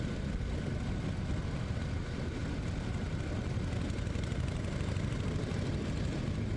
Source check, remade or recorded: recorded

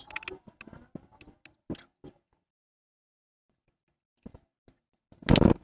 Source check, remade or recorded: recorded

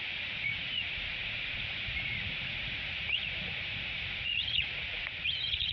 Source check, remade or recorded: remade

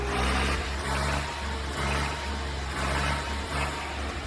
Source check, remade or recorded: recorded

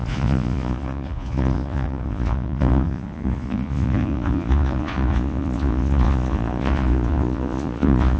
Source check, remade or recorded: remade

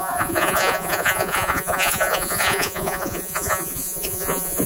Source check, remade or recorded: remade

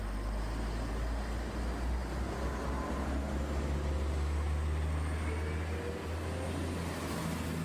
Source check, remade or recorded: recorded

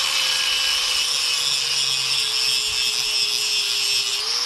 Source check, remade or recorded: recorded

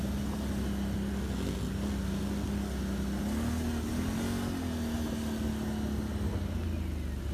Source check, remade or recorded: recorded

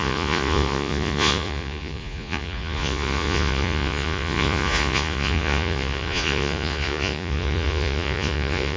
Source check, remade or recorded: remade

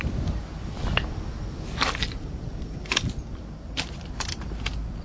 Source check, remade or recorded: recorded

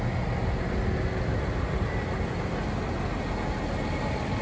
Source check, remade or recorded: recorded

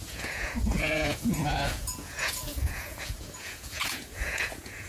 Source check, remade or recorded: remade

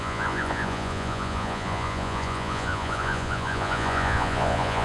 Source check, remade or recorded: remade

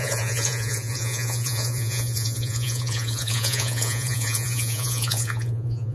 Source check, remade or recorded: remade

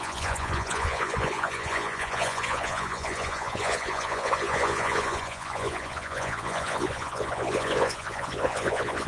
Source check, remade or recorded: remade